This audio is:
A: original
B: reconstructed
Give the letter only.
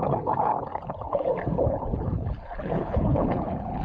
B